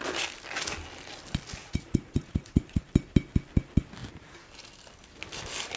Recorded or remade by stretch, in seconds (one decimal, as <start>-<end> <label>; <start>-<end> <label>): 0.0-1.6 recorded; 1.6-2.8 remade; 2.8-5.8 recorded